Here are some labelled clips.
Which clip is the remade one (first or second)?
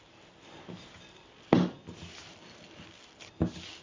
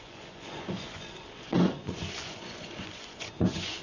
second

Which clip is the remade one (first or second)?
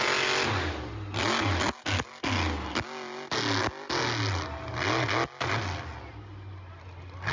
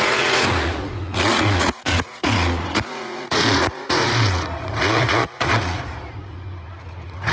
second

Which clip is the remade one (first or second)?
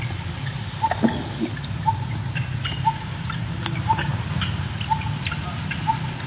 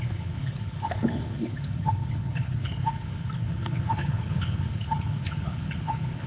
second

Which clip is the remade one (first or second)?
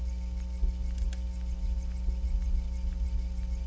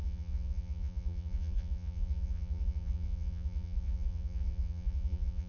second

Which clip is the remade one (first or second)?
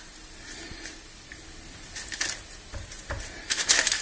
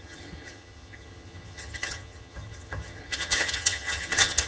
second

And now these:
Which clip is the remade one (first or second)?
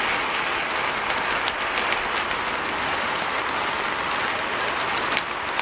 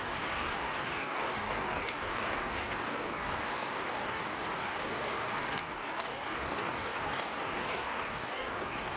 second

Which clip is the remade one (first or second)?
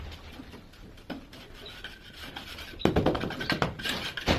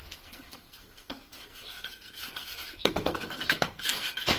second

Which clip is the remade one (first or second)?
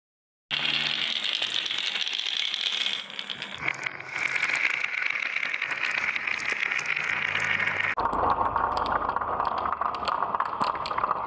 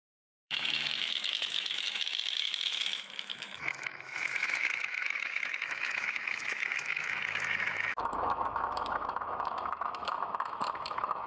second